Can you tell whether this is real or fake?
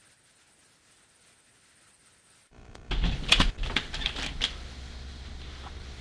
real